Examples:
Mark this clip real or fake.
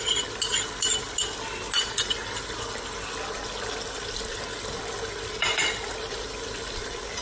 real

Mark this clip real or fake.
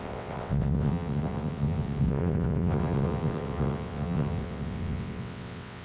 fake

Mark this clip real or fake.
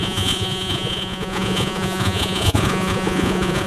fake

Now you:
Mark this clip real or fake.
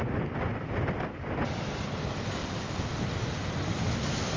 real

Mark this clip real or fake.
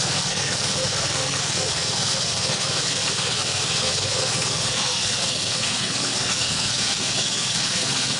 fake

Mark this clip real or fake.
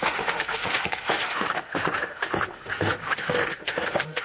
fake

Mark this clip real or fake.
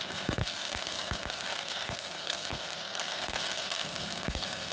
fake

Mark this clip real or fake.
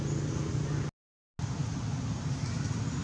real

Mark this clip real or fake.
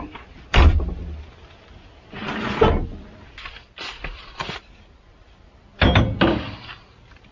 real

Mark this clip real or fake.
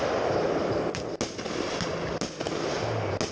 real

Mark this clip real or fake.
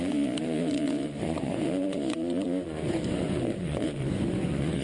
fake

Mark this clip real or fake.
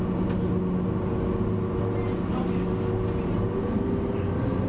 real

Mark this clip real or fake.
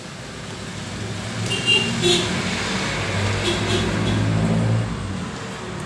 real